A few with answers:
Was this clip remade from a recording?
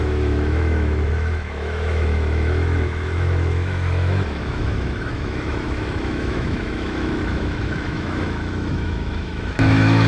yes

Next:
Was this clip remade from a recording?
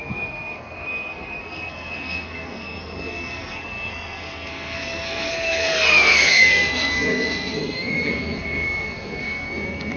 yes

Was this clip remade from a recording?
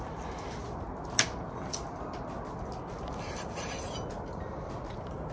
no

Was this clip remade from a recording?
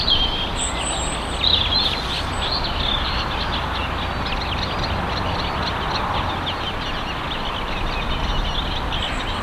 no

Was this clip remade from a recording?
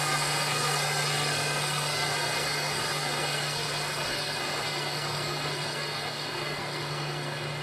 yes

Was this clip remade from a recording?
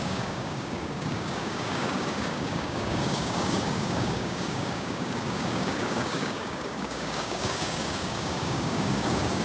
yes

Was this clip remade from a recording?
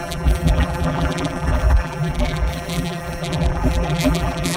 yes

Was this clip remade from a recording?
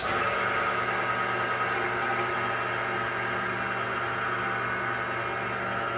no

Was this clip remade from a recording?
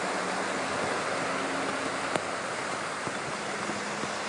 no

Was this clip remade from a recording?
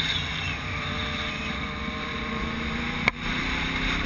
yes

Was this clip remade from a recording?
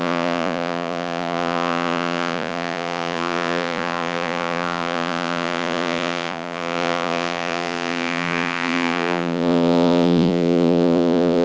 yes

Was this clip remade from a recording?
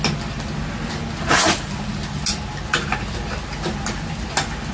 no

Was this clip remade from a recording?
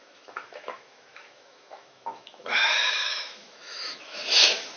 yes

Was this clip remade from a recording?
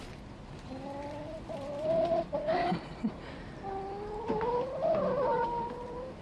yes